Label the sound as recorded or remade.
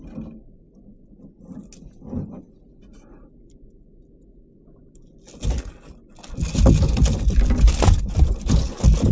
recorded